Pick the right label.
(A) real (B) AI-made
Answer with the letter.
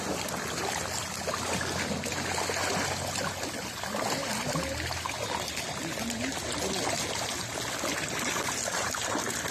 A